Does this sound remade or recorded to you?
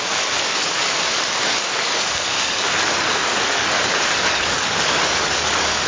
remade